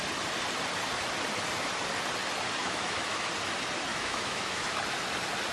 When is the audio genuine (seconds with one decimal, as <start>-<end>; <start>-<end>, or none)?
0.0-2.6; 3.3-3.9; 4.8-5.5